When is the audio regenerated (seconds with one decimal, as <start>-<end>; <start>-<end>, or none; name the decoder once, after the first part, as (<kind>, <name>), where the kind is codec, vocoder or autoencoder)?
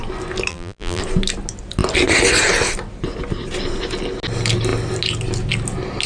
0.5-1.0 (vocoder, BigVGAN v2)